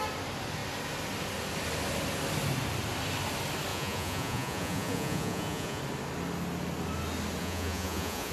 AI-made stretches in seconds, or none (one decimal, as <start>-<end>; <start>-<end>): 3.7-5.8; 7.4-8.3